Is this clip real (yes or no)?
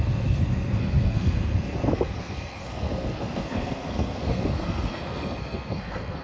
no